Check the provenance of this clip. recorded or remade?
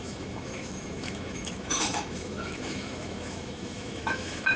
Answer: remade